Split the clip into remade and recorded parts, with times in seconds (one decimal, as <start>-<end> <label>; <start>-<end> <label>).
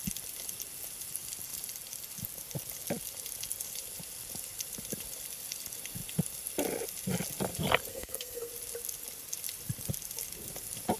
0.0-7.9 recorded; 7.9-8.5 remade; 8.5-11.0 recorded